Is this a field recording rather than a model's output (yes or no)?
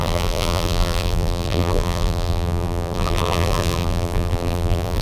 no